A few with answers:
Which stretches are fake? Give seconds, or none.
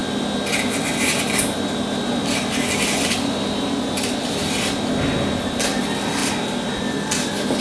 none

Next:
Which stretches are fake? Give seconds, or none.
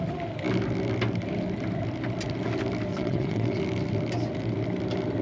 2.9-3.6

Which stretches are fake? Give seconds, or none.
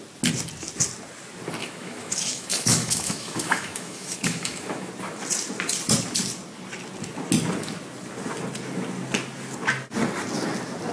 1.6-4.9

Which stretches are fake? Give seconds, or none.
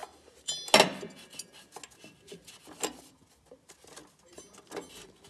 none